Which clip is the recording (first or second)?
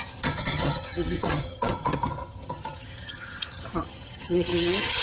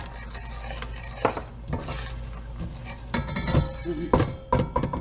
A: second